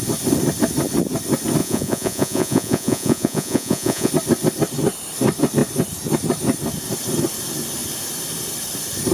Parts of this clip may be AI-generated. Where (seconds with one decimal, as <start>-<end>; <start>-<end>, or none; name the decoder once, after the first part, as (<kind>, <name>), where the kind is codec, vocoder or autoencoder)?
1.6-4.1 (vocoder, Vocos)